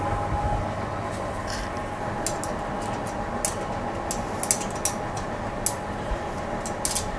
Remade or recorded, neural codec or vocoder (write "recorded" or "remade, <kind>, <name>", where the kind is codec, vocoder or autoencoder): recorded